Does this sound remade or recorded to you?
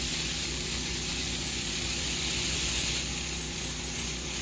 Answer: remade